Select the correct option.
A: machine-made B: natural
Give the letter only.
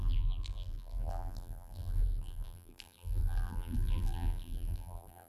A